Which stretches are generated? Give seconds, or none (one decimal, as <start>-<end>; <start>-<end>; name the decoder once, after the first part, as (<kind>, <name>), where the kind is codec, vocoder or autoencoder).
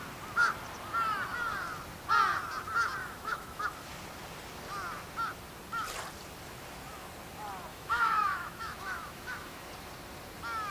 3.0-3.6 (autoencoder, DAC-VAE); 7.7-9.7